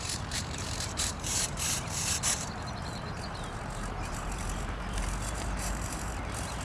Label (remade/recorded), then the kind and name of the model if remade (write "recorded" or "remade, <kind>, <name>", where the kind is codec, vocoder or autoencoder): remade, vocoder, BigVGAN v2